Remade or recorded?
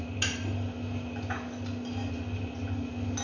recorded